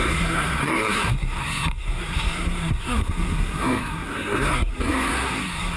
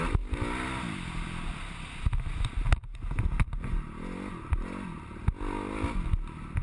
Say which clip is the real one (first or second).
second